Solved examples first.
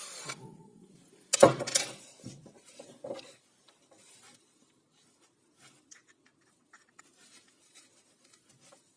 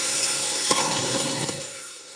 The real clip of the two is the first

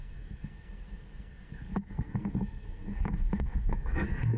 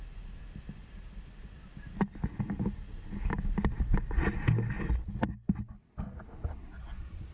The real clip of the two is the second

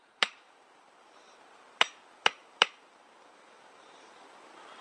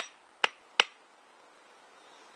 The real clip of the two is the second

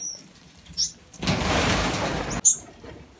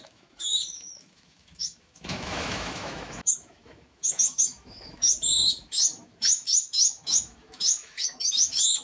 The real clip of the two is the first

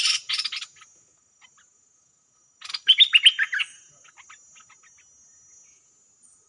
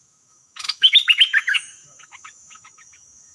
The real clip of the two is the first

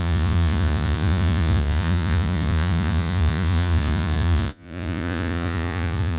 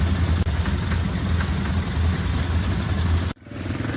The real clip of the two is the second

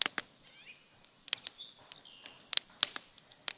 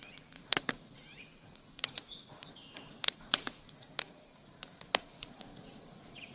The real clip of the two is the first